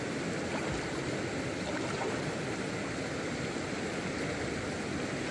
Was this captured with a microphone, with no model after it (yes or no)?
yes